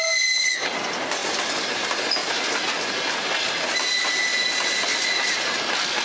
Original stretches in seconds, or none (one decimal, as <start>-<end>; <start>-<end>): 0.0-6.0